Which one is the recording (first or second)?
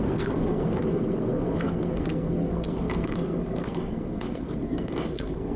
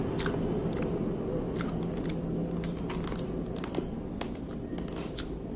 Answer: second